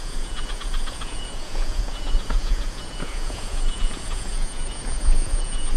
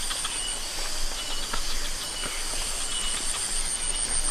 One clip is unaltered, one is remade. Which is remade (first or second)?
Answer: first